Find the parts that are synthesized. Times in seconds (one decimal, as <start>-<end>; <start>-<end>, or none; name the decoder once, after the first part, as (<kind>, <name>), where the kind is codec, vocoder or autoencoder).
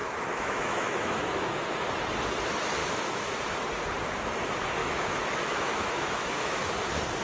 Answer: 0.0-1.6 (autoencoder, DAC-VAE); 2.8-3.4; 4.8-6.7